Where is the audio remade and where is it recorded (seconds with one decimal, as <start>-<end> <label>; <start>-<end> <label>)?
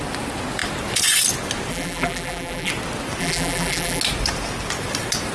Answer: 0.0-1.7 recorded; 1.7-2.7 remade; 2.7-3.2 recorded; 3.2-4.0 remade; 4.0-5.3 recorded